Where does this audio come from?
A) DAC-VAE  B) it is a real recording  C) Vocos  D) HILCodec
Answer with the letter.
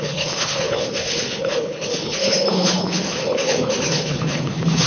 D